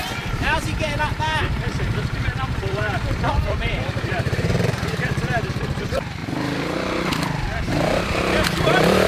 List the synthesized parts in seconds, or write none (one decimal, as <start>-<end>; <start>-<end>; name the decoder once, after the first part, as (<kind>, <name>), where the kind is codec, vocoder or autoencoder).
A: 0.0-6.2 (vocoder, BigVGAN v2); 7.6-9.1